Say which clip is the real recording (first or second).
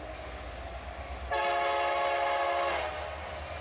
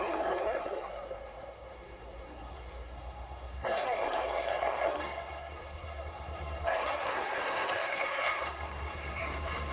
first